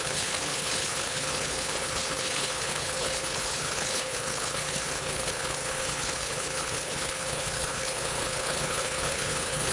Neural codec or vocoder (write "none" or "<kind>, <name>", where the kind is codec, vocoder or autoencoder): codec, HILCodec